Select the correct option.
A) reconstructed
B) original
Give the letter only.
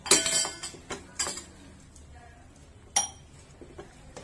B